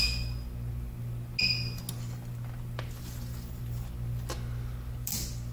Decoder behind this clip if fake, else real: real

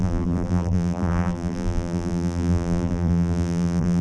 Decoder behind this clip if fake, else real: fake, vocoder, BigVGAN v2